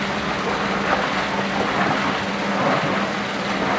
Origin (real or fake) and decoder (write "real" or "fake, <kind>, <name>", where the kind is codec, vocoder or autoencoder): real